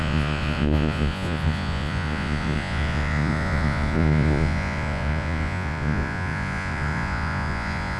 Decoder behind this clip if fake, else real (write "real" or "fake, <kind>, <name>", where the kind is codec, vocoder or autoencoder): fake, vocoder, Vocos